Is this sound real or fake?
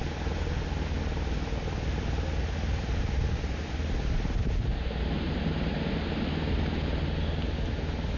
real